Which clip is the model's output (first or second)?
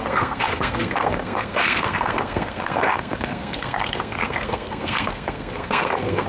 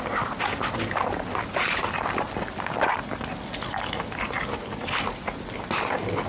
first